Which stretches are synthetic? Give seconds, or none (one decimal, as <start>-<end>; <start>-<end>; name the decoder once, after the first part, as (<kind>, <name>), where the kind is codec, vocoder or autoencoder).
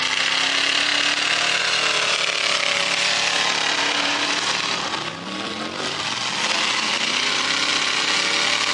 0.0-0.9 (vocoder, BigVGAN v2); 1.6-7.7